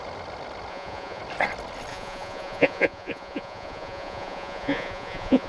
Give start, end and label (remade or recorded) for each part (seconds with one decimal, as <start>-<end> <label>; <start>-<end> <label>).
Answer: 0.0-0.7 recorded; 0.7-1.2 remade; 1.2-1.9 recorded; 1.9-5.5 remade